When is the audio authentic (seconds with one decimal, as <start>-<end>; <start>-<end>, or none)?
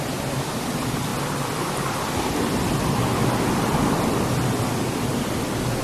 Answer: 0.0-5.8